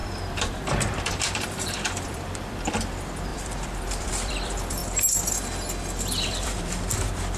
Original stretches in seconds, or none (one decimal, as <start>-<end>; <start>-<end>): 4.8-6.2